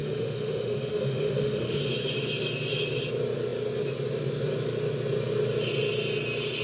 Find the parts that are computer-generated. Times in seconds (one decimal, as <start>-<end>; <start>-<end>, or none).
0.0-1.8